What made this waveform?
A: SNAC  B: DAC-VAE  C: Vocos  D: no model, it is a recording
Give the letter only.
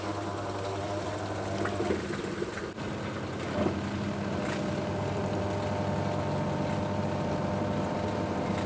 D